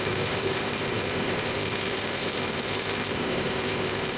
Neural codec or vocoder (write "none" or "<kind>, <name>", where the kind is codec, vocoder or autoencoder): codec, ZipCodec